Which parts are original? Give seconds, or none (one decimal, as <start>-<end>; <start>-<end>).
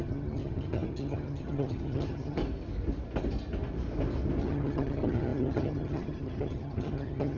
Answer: 2.4-4.4